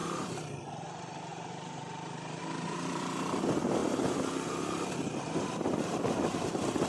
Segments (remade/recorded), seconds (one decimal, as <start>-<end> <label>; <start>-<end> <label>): 0.0-0.6 remade; 0.6-1.3 recorded; 1.3-2.4 remade; 2.4-6.9 recorded

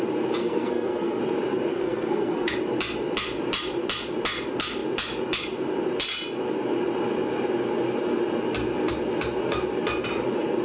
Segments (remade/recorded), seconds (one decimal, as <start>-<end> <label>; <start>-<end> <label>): 0.0-0.4 recorded; 0.4-1.2 remade; 1.2-1.7 recorded; 1.7-2.5 remade; 2.5-10.6 recorded

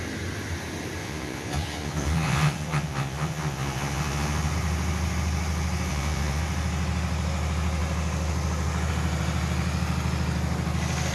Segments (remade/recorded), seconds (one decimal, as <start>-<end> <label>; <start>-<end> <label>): 0.0-1.0 recorded; 1.0-4.5 remade; 4.5-5.9 recorded; 5.9-6.4 remade; 6.4-11.1 recorded

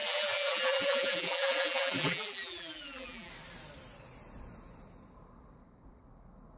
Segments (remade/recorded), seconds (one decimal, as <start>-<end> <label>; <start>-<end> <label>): 0.0-3.3 remade; 3.3-6.6 recorded